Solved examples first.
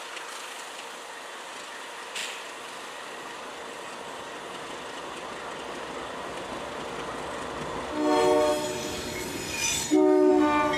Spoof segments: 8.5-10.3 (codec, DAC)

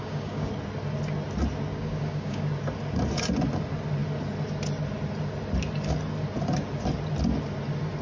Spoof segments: 0.0-0.5 (codec, DAC); 1.7-2.4

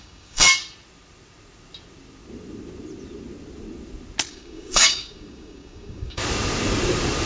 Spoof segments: 0.0-0.4 (codec, DAC); 4.3-6.2

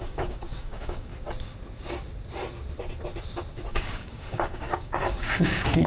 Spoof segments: 0.0-1.1 (codec, DAC); 3.7-5.9